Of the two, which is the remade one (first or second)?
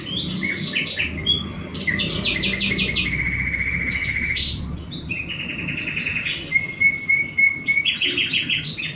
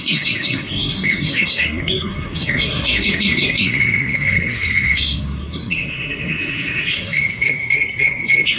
second